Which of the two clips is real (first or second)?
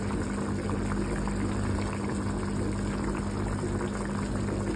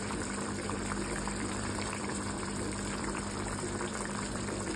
first